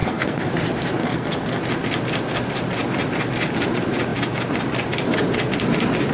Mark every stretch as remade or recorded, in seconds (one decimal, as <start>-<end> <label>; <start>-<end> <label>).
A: 0.0-0.5 remade; 0.5-1.0 recorded; 1.0-1.6 remade; 1.6-6.1 recorded